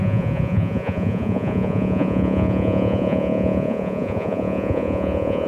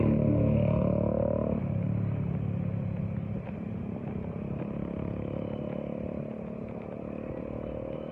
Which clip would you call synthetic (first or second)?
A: first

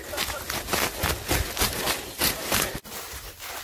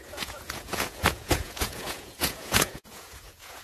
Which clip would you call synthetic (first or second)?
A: second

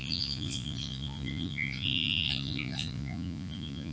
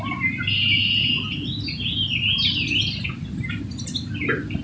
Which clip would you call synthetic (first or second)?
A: first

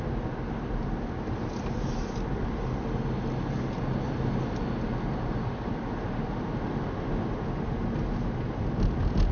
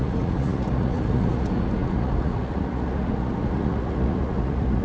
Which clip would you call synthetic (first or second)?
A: second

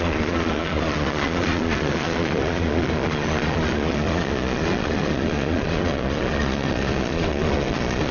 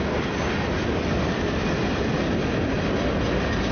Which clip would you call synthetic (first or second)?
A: first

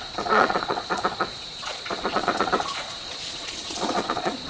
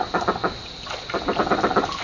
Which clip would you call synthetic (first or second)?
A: first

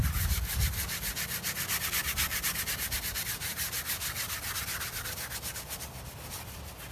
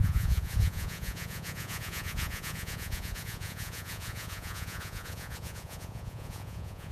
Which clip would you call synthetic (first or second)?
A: second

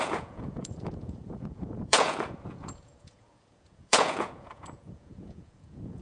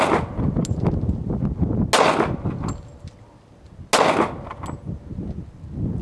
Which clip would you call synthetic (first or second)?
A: first